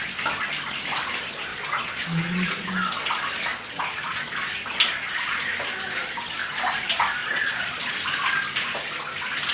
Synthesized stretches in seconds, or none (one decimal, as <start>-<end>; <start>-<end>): 1.5-2.7; 3.5-4.3; 7.2-7.9